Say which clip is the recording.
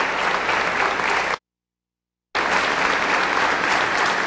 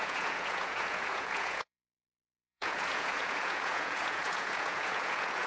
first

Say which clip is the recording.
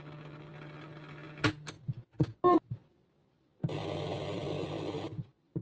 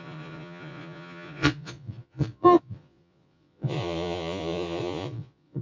first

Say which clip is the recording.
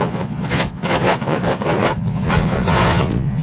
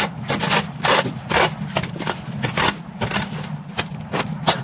second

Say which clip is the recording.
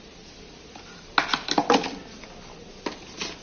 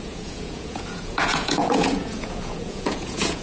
first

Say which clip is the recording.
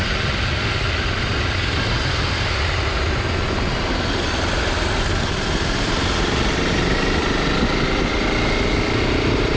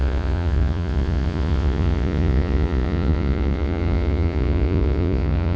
first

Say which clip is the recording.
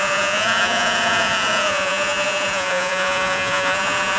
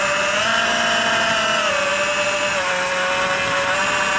second